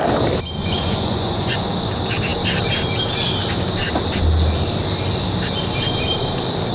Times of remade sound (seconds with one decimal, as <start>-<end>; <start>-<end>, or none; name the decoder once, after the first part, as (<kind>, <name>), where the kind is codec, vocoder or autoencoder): 0.6-1.6 (vocoder, Vocos)